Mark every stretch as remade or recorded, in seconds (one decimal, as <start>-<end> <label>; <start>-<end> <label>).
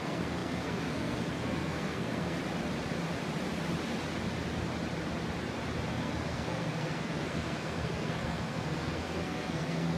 0.0-2.4 remade; 2.4-5.9 recorded; 5.9-10.0 remade